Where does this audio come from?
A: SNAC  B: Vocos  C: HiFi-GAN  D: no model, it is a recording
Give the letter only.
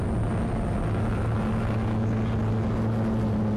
D